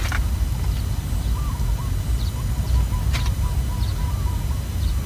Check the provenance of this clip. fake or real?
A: real